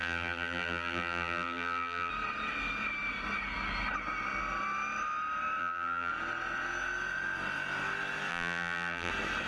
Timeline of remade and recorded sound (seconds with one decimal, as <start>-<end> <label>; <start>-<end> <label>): 0.0-2.1 remade; 2.1-5.6 recorded; 5.6-6.1 remade; 6.1-8.3 recorded; 8.3-9.1 remade; 9.1-9.5 recorded

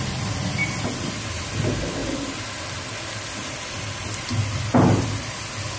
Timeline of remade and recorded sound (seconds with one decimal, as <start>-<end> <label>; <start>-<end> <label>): 0.0-5.8 recorded

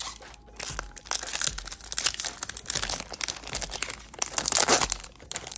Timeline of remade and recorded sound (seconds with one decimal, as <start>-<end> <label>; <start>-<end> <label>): 0.0-5.6 recorded

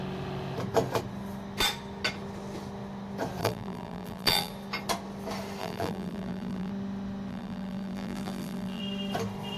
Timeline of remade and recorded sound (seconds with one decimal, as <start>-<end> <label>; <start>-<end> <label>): 0.0-3.4 recorded; 3.4-4.5 remade; 4.5-5.6 recorded; 5.6-6.7 remade; 6.7-7.3 recorded; 7.3-8.8 remade; 8.8-9.6 recorded

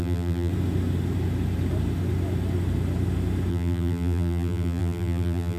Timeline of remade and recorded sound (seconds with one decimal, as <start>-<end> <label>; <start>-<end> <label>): 0.0-0.5 remade; 0.5-3.5 recorded; 3.5-5.6 remade

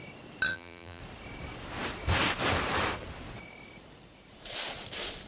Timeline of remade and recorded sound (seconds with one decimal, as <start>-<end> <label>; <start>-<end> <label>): 0.0-0.5 recorded; 0.5-1.0 remade; 1.0-5.3 recorded

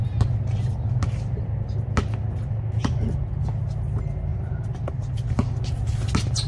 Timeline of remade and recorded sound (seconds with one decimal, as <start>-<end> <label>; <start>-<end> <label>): 0.0-4.3 recorded; 4.3-4.9 remade; 4.9-6.5 recorded

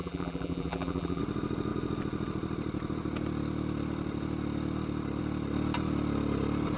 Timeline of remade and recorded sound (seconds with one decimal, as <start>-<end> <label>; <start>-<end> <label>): 0.0-1.2 remade; 1.2-6.8 recorded